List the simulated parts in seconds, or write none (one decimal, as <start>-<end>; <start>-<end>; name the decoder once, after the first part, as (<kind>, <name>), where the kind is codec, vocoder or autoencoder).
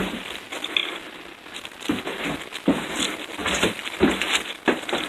0.8-1.6 (vocoder, BigVGAN v2); 3.4-4.3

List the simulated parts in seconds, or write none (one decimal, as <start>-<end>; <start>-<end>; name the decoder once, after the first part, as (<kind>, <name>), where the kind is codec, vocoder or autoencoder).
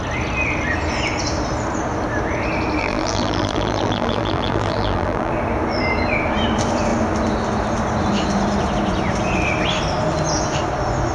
2.8-5.3 (vocoder, BigVGAN v2)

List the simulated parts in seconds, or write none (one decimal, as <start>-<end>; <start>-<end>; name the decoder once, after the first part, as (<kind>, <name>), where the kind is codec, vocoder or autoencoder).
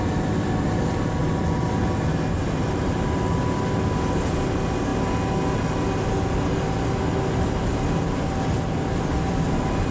1.2-1.8 (vocoder, BigVGAN v2)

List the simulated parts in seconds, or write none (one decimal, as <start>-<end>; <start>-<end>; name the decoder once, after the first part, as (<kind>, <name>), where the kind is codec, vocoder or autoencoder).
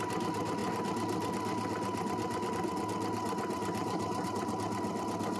3.8-4.5 (vocoder, BigVGAN v2)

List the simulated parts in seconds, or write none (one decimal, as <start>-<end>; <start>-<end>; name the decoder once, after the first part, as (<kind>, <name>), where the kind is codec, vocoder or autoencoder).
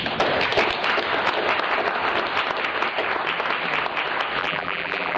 4.4-5.2 (vocoder, BigVGAN v2)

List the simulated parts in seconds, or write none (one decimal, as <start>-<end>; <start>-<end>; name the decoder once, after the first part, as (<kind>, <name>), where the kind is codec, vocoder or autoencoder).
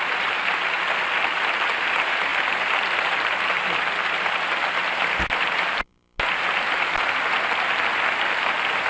2.3-7.2 (vocoder, BigVGAN v2)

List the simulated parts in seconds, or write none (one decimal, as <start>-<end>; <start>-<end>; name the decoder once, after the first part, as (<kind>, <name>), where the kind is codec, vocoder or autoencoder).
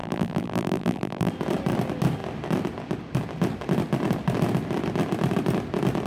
0.0-1.3 (vocoder, BigVGAN v2)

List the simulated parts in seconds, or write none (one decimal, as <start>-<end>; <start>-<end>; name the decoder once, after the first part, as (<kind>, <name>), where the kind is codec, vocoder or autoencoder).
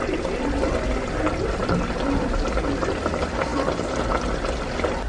none